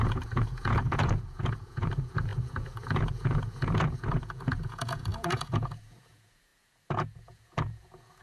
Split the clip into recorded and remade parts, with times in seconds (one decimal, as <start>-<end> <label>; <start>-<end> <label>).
0.0-8.2 remade